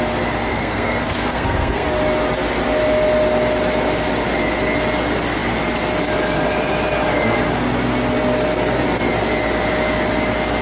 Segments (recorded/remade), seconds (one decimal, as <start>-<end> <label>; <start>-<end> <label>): 0.0-0.5 recorded; 0.5-1.9 remade; 1.9-10.6 recorded